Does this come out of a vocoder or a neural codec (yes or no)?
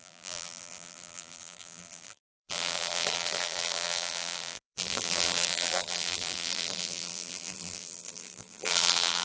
yes